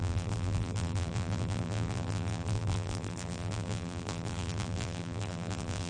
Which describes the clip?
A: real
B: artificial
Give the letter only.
B